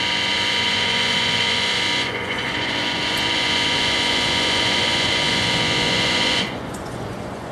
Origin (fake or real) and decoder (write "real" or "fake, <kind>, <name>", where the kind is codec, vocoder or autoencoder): fake, vocoder, Vocos